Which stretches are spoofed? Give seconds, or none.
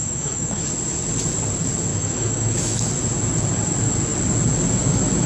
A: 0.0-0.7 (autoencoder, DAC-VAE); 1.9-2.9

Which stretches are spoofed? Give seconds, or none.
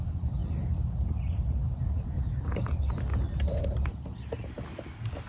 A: none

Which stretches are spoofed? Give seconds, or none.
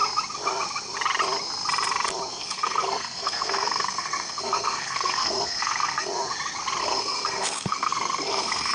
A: 2.4-6.1 (codec, SNAC); 6.8-8.7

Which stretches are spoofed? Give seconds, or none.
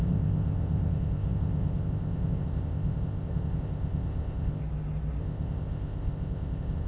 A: 0.0-4.6 (codec, ZipCodec); 5.2-6.9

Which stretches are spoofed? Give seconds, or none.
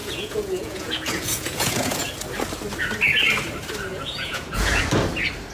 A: 0.0-2.1 (vocoder, Vocos); 3.9-4.8